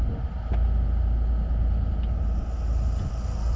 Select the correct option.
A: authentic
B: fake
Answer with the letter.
A